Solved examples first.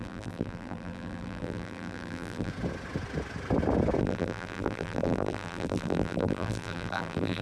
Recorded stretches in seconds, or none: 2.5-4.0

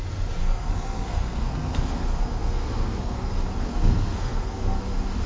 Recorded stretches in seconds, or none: 0.0-0.4; 3.3-3.7; 4.8-5.3